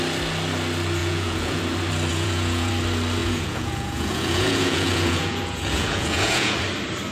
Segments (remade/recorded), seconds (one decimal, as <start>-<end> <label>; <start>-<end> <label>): 0.0-1.0 recorded; 1.0-1.6 remade; 1.6-2.1 recorded; 2.1-2.7 remade; 2.7-3.2 recorded; 3.2-6.5 remade; 6.5-7.1 recorded